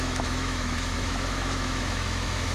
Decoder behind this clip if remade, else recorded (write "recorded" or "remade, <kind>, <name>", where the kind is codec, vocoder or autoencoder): remade, autoencoder, DAC-VAE